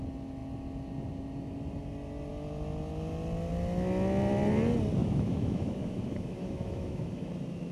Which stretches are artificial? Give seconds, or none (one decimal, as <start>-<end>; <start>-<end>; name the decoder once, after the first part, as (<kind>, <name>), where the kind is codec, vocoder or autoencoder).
5.0-7.3 (autoencoder, DAC-VAE)